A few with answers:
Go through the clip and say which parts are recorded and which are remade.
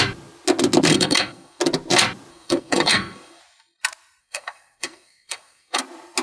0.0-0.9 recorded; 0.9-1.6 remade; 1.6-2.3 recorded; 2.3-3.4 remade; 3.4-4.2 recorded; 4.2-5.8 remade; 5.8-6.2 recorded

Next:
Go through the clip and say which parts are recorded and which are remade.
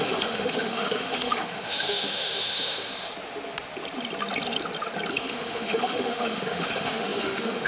0.0-2.9 remade; 2.9-5.1 recorded; 5.1-7.7 remade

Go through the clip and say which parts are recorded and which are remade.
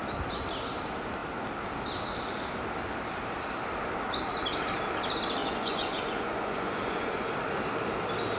0.0-5.4 recorded; 5.4-7.3 remade; 7.3-8.4 recorded